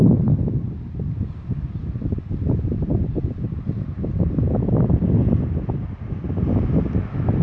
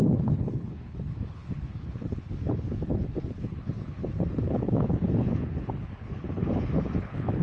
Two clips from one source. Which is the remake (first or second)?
second